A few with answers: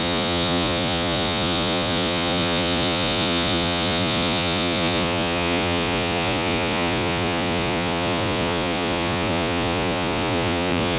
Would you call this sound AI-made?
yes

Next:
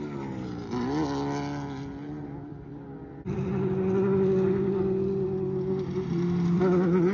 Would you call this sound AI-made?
no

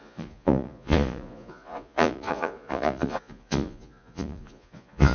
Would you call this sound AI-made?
yes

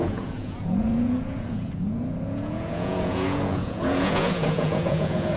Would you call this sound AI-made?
yes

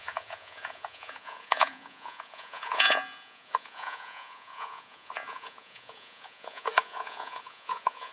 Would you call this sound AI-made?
yes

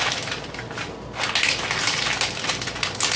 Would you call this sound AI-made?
no